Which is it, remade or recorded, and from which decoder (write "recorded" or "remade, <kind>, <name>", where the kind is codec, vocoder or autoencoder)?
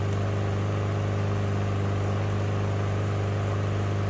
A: recorded